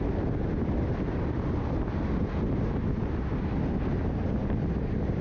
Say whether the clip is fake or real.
real